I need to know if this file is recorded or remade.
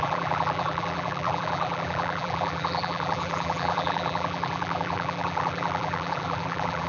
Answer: remade